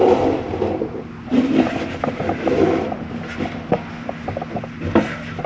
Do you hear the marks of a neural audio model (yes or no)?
no